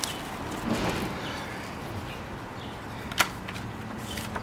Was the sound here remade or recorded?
recorded